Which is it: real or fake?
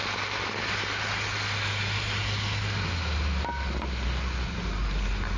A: real